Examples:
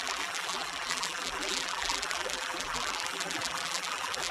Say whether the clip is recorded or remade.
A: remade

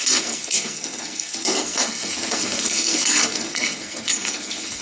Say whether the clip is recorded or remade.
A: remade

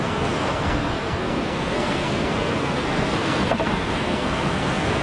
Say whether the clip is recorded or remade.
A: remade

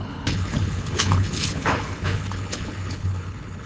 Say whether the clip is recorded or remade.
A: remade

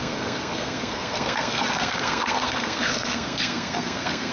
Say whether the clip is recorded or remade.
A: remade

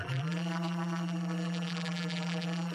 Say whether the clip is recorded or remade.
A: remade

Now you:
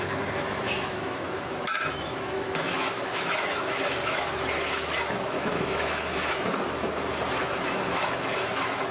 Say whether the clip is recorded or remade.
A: remade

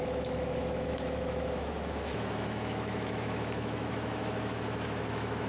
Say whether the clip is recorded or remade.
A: remade